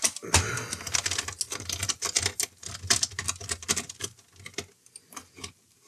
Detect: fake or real real